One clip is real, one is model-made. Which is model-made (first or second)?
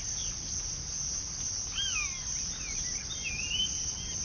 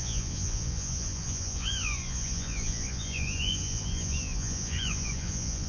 second